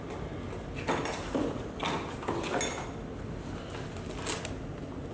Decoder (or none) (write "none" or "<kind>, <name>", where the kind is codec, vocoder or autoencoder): none